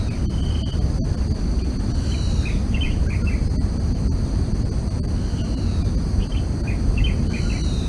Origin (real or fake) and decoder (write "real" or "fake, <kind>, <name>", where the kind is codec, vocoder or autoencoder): real